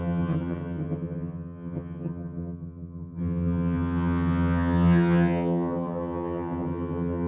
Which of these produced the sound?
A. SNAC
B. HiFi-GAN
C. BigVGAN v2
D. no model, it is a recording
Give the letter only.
B